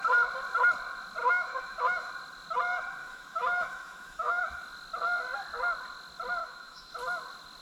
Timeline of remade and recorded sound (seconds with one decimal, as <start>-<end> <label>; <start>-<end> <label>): 0.0-1.2 recorded; 1.2-2.1 remade; 2.1-3.0 recorded; 3.0-4.4 remade; 4.4-6.4 recorded; 6.4-6.9 remade; 6.9-7.6 recorded